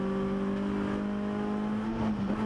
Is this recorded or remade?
recorded